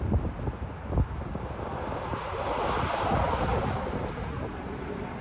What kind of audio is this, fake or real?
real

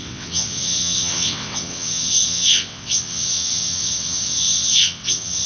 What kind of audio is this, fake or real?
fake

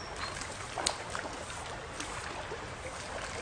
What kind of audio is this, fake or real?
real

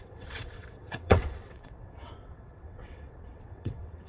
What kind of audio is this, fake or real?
fake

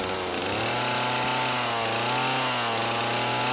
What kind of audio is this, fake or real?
real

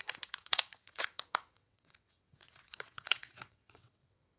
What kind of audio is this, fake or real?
fake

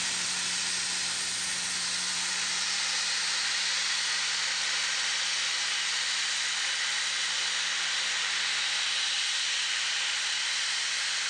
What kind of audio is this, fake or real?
real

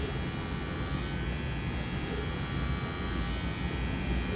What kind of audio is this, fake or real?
real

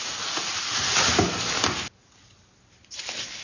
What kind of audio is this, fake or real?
real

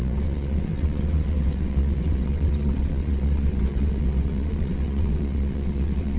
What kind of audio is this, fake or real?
fake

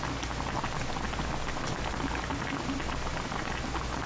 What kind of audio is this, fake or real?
real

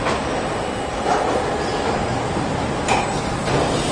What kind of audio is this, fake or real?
real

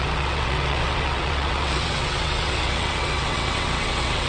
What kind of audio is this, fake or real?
fake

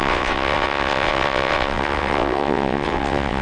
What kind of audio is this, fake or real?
fake